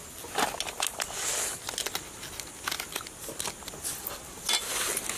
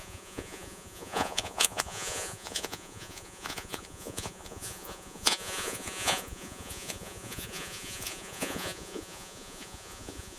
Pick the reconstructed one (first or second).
second